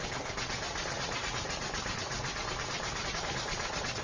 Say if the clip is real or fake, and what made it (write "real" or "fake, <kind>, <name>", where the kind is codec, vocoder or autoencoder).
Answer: fake, vocoder, BigVGAN v2